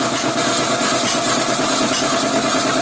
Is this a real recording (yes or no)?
yes